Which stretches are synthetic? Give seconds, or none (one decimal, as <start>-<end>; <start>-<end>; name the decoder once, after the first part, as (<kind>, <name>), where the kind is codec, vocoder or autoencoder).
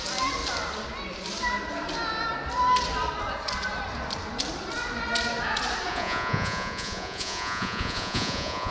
5.9-8.7 (vocoder, Vocos)